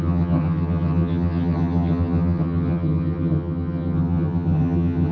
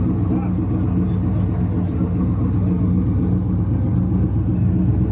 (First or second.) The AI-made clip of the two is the first